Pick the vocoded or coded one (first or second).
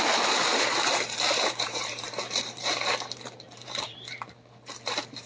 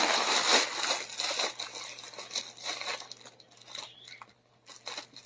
first